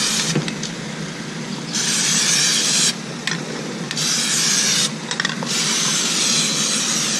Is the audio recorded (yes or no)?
yes